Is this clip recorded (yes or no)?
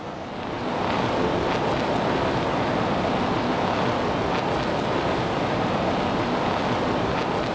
yes